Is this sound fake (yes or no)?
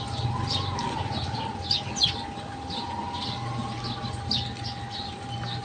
no